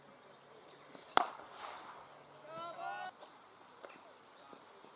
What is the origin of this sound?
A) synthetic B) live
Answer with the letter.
B